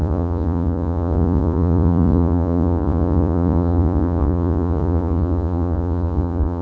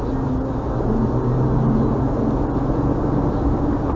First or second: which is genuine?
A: second